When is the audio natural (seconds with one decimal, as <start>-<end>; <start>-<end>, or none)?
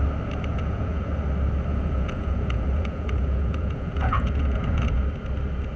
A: 0.0-0.5; 1.1-1.7; 5.0-5.8